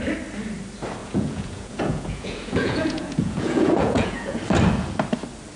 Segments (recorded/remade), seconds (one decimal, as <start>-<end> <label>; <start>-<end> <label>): 0.0-1.0 recorded; 1.0-4.4 remade; 4.4-5.6 recorded